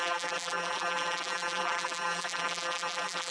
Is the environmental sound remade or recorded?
remade